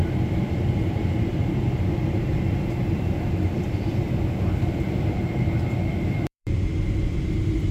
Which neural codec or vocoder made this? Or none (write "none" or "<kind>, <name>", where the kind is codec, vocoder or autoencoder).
vocoder, BigVGAN v2